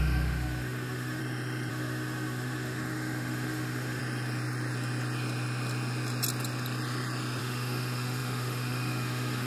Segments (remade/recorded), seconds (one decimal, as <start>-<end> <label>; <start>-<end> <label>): 0.0-1.2 remade; 1.2-1.7 recorded; 1.7-4.0 remade; 4.0-7.4 recorded; 7.4-9.5 remade